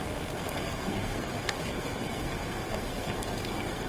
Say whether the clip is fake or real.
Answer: fake